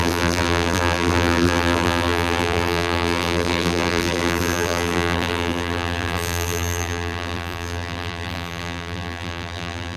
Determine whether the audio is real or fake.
fake